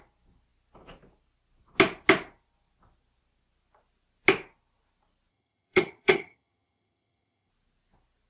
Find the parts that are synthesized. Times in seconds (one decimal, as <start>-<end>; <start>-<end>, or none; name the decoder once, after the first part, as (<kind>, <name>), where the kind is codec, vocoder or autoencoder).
5.3-7.5 (vocoder, HiFi-GAN)